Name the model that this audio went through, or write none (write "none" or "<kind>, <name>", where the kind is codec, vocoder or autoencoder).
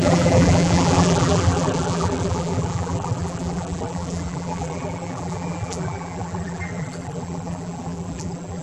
vocoder, BigVGAN v2